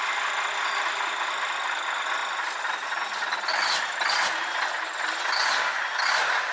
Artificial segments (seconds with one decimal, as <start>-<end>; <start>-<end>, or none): none